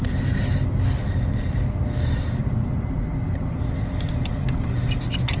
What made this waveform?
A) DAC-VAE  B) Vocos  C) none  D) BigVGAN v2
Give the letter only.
C